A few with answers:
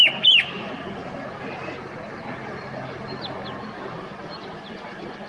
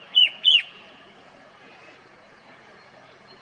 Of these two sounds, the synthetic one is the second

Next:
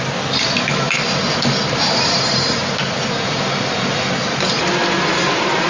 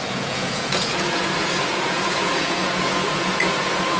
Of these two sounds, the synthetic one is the second